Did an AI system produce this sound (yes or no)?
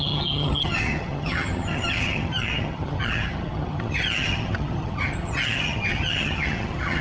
yes